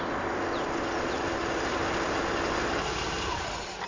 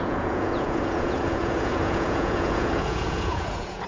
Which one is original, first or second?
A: first